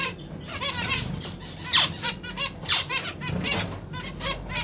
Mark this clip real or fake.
fake